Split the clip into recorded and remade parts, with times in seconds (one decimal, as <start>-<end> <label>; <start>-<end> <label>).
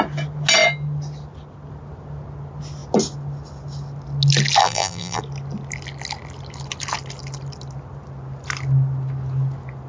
0.0-4.6 recorded; 4.6-5.2 remade; 5.2-9.9 recorded